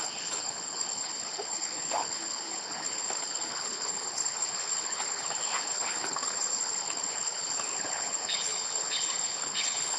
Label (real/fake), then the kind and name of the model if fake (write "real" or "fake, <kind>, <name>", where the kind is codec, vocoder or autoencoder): fake, codec, HILCodec